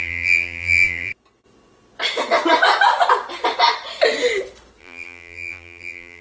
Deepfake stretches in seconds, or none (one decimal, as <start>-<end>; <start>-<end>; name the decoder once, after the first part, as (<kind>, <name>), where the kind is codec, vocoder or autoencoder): 0.0-1.1 (vocoder, BigVGAN v2); 4.8-6.2